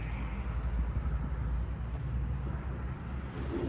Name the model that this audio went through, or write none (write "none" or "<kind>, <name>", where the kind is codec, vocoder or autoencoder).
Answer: none